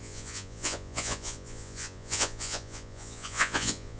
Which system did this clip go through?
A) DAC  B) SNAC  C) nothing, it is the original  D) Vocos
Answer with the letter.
D